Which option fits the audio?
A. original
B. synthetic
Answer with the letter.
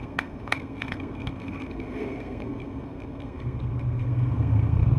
B